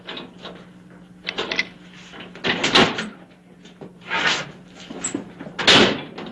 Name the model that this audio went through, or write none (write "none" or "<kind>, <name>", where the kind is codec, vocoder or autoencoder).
none